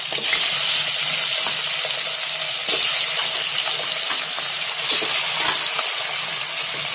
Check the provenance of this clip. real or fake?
real